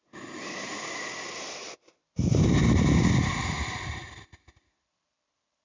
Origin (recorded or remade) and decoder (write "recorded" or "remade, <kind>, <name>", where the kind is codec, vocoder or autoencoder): recorded